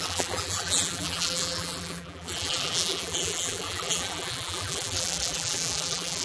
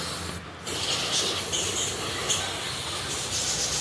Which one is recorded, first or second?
second